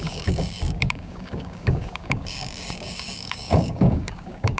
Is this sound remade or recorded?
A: remade